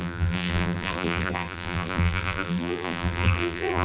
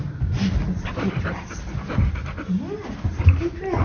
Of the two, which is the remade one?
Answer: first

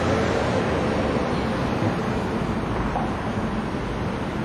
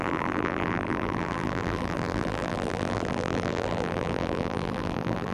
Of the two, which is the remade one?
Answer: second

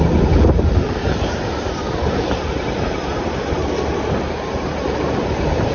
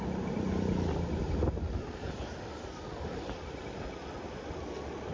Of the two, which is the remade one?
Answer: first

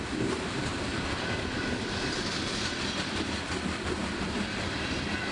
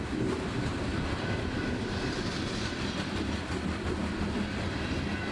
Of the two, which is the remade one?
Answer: first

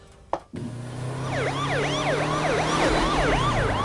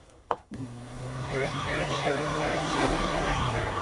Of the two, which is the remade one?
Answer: second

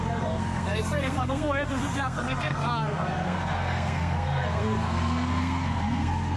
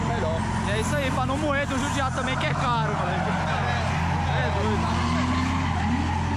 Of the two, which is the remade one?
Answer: first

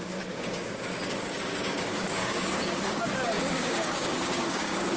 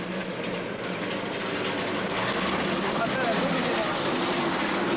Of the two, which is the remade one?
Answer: first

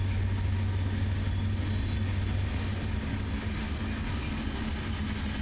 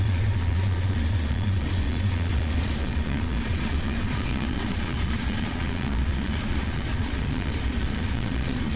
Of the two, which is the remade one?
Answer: second